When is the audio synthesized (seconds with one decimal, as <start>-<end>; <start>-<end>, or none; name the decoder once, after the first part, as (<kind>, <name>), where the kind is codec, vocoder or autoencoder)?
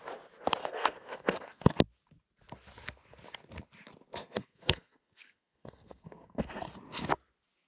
0.6-1.8 (codec, SNAC); 4.2-6.7